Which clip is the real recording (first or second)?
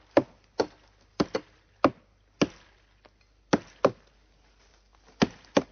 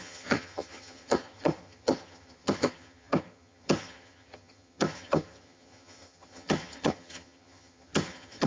first